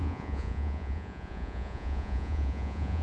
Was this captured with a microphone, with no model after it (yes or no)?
no